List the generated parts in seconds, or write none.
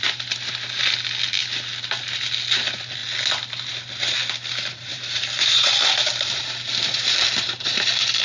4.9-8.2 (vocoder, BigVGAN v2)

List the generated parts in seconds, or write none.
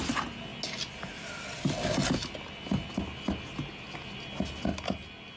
none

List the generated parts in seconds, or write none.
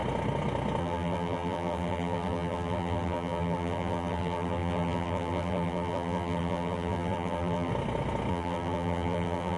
0.8-7.7 (vocoder, BigVGAN v2); 8.3-9.6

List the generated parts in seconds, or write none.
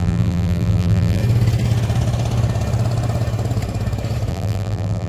0.0-1.2 (vocoder, BigVGAN v2); 4.3-5.1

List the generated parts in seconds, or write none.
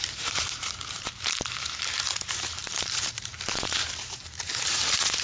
0.0-5.2 (vocoder, BigVGAN v2)